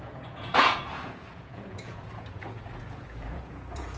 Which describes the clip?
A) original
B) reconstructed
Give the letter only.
B